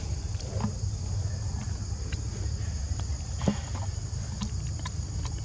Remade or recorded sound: recorded